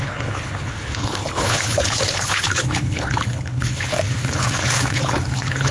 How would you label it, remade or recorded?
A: remade